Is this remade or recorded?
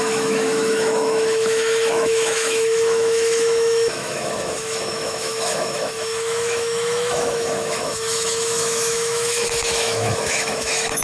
remade